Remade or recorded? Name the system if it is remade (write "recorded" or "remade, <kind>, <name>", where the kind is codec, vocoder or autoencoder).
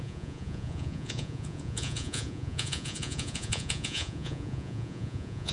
remade, vocoder, Vocos